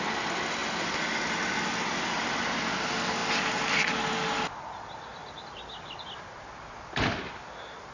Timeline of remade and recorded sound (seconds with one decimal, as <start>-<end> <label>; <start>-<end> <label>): 0.0-5.1 recorded; 5.1-6.0 remade; 6.0-7.9 recorded